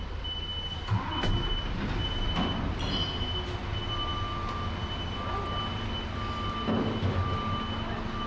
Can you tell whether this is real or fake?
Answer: real